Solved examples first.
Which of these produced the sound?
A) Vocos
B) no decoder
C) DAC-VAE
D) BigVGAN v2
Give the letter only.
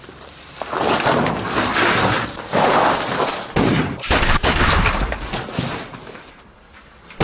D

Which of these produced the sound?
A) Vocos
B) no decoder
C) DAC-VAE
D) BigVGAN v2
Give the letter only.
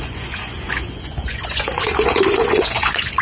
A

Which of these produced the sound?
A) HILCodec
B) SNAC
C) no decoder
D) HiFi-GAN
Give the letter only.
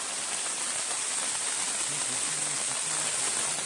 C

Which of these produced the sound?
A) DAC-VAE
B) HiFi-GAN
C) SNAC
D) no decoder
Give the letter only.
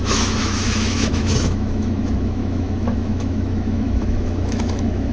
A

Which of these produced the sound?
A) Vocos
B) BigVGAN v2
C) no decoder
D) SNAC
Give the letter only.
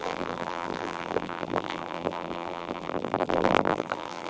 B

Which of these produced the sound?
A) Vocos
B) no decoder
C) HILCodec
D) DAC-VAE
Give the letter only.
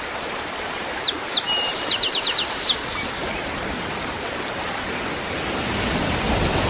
B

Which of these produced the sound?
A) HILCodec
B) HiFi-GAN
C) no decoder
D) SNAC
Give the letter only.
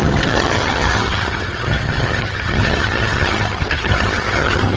B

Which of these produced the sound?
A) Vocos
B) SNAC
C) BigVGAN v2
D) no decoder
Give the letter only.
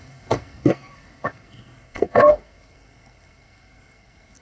B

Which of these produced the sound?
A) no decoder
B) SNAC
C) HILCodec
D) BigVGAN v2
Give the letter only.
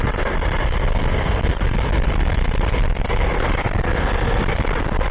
D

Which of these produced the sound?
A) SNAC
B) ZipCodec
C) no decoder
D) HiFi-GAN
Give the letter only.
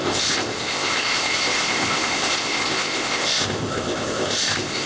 B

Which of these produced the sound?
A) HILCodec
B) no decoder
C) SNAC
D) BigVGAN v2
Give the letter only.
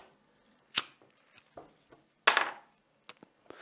B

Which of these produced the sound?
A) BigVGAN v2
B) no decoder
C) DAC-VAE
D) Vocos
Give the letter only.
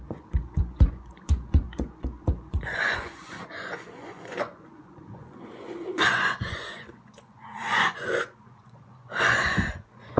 D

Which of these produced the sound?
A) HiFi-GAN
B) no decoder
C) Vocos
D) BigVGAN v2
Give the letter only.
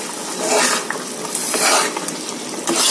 B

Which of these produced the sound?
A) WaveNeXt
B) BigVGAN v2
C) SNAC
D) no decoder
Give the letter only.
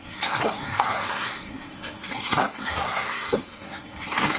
C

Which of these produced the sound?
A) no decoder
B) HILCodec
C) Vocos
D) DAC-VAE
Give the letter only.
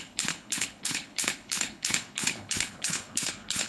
B